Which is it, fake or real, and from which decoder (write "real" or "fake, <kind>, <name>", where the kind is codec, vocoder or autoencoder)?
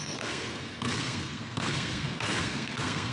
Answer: fake, codec, SNAC